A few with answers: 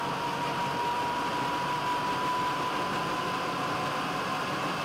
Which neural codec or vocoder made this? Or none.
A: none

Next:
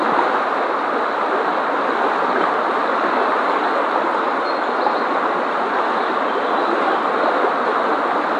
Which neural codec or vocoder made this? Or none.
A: none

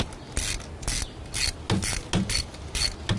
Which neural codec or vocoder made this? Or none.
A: none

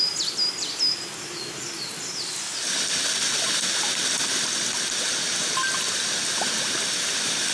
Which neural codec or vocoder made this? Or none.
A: none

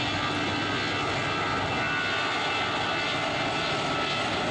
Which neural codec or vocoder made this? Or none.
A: none